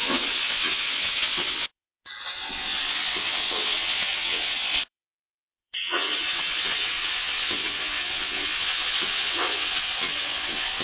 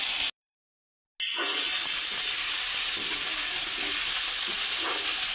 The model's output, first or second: first